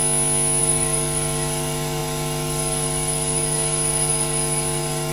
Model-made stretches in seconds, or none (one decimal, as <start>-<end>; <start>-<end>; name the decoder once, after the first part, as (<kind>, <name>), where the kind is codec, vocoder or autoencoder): 0.6-5.1 (codec, DAC)